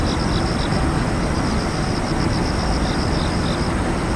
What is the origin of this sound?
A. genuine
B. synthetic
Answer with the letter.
A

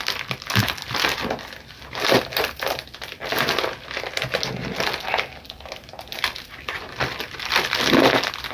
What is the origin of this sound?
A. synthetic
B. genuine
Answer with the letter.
B